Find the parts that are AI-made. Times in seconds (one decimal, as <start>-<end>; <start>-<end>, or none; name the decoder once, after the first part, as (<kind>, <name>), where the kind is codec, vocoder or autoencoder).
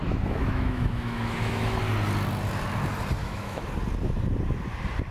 0.0-1.8 (autoencoder, DAC-VAE); 3.2-3.7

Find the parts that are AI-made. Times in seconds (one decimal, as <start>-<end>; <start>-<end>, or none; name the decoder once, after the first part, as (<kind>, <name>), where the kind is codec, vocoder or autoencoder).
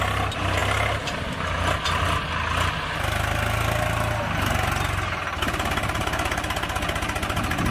none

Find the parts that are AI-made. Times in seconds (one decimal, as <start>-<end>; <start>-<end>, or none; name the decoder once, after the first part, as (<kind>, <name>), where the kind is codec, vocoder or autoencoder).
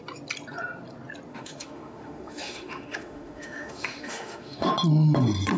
1.3-4.7 (autoencoder, DAC-VAE)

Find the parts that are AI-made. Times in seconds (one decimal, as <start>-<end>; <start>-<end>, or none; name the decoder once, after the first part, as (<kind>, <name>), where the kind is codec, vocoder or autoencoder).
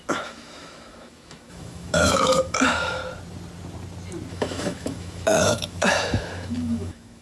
0.0-3.0 (autoencoder, DAC-VAE); 4.3-7.2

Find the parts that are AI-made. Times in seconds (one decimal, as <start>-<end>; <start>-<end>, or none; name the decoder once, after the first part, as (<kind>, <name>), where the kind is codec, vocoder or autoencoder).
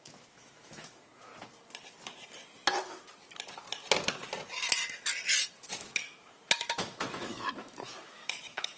0.0-1.3 (autoencoder, DAC-VAE); 5.7-8.8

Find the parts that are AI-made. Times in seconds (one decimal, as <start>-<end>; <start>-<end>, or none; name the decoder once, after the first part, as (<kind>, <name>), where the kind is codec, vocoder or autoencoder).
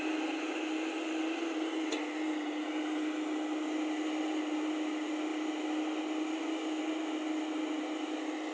none